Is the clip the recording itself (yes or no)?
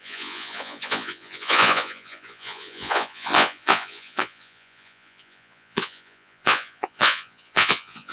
no